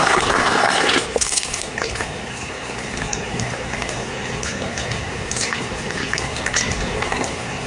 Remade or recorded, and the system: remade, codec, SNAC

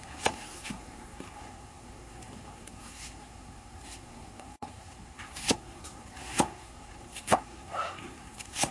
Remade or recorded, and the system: remade, codec, SNAC